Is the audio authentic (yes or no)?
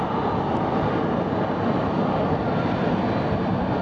yes